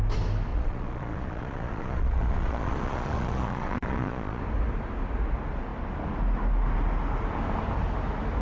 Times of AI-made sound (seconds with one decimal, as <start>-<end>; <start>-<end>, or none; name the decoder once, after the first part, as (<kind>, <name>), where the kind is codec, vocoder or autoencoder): 0.5-4.4 (vocoder, Vocos)